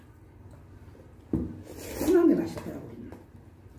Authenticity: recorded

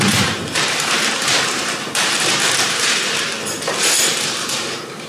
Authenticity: remade